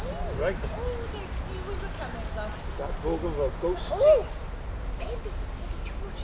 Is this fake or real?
real